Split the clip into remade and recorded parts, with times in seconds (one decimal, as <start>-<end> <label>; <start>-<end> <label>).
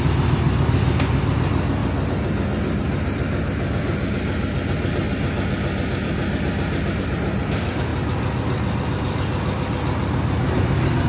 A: 0.0-1.8 remade; 1.8-7.0 recorded; 7.0-7.9 remade; 7.9-11.1 recorded